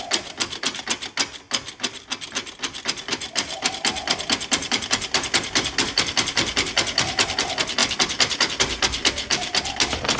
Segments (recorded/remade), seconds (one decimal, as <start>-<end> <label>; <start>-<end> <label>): 0.0-10.2 recorded